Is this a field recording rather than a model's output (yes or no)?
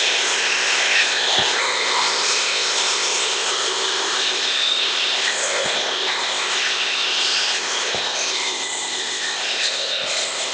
no